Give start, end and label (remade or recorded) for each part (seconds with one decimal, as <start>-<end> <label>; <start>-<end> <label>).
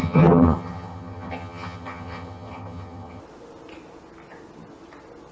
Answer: 0.0-3.2 remade; 3.2-5.3 recorded